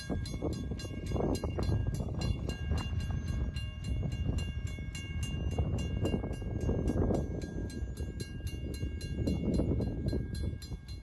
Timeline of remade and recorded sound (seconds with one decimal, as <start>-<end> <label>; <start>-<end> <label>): 0.0-11.0 recorded